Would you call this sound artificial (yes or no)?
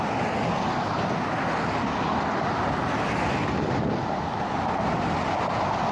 no